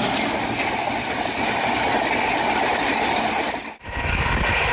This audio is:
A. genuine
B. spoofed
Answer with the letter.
A